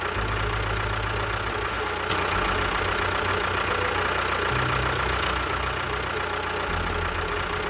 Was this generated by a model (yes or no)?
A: no